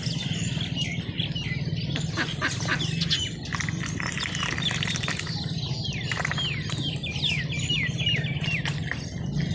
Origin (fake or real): real